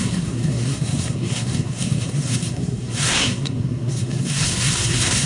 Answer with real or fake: fake